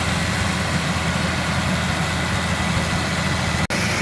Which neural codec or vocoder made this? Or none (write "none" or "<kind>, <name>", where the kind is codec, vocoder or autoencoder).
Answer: none